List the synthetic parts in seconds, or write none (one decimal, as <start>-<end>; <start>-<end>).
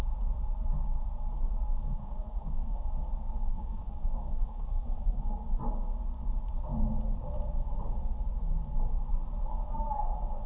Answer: 1.8-2.9; 3.5-5.3